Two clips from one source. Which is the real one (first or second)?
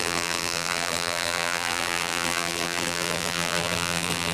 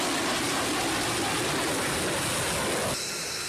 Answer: second